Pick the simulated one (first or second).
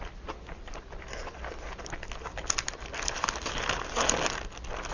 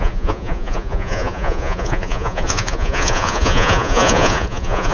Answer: second